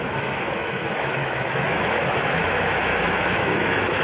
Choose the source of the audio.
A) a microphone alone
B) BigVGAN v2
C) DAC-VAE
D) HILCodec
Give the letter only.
C